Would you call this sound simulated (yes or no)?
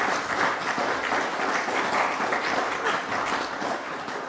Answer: no